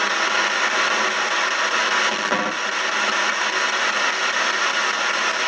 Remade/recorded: recorded